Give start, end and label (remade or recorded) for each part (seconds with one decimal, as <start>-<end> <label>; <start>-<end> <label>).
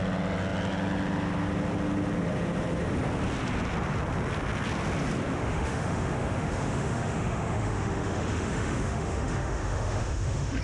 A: 0.0-5.3 recorded; 5.3-10.6 remade